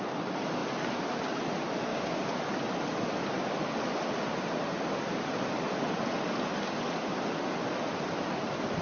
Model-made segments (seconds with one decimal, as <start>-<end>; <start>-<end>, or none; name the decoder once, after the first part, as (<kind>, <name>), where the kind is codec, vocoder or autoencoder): 1.9-2.4 (codec, DAC)